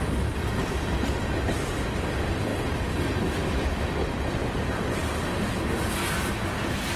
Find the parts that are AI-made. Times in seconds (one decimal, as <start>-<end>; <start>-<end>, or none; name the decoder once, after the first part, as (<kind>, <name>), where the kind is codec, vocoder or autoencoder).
none